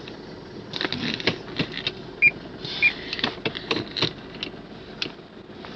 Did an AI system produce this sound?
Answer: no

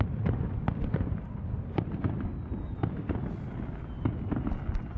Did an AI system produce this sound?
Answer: no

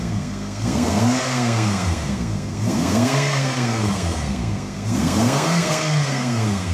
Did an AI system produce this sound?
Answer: yes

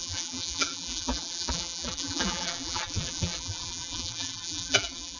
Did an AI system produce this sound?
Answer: yes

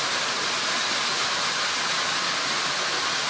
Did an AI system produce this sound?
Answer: no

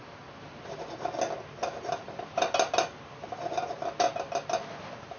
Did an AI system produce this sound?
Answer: no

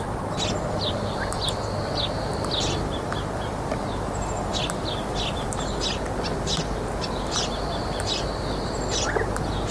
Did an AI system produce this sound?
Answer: no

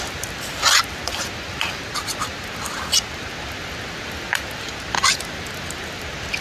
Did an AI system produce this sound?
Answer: no